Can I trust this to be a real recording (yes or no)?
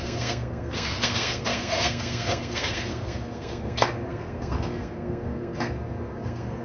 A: no